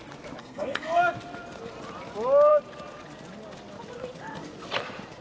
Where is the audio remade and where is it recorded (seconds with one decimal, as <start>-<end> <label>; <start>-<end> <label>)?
0.0-0.4 recorded; 0.4-1.0 remade; 1.0-5.2 recorded